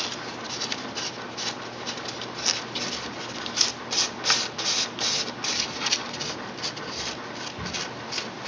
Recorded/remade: recorded